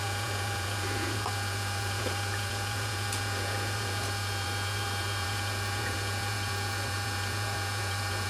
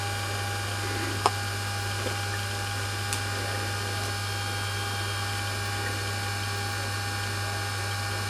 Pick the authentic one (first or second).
second